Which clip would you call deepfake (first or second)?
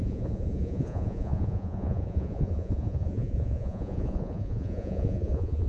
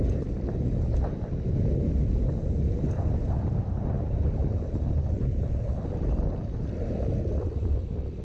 first